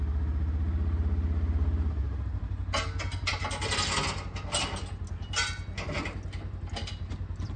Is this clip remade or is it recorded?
recorded